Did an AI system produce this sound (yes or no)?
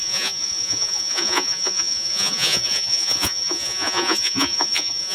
yes